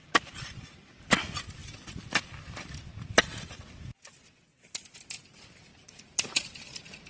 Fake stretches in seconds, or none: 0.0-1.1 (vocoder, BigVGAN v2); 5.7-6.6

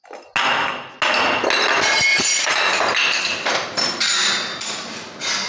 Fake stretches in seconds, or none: 2.1-2.7 (vocoder, BigVGAN v2)

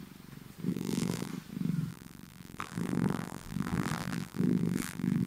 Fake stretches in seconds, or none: 0.7-1.3 (vocoder, BigVGAN v2); 1.9-5.3

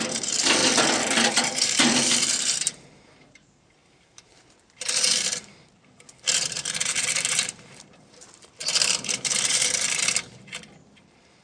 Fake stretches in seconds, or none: 0.0-0.6 (vocoder, BigVGAN v2); 1.3-11.4

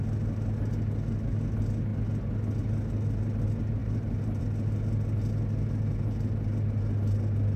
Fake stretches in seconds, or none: 3.8-4.4 (vocoder, BigVGAN v2)